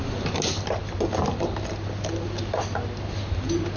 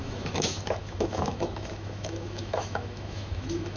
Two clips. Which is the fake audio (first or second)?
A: second